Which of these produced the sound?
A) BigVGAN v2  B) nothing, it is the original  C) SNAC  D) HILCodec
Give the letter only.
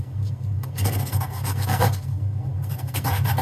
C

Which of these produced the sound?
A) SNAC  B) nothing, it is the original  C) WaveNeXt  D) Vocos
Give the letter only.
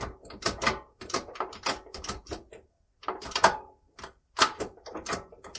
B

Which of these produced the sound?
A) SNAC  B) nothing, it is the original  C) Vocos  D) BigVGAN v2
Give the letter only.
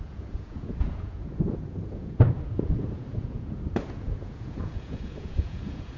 C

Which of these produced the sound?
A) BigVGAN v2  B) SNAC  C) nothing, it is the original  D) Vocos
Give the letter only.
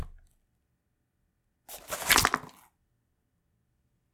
C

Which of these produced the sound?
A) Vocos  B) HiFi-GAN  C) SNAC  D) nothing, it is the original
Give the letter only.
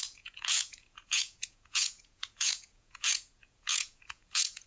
A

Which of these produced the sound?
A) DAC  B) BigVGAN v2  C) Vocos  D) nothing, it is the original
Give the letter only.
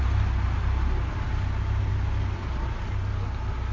D